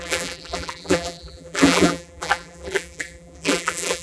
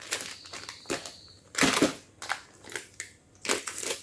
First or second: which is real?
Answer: second